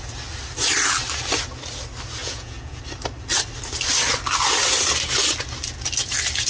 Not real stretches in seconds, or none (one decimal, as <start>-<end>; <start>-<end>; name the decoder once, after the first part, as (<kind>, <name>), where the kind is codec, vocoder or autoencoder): 2.2-2.8 (vocoder, Vocos)